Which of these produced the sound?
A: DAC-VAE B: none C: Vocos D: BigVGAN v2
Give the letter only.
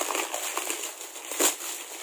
B